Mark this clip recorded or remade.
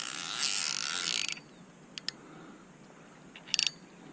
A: recorded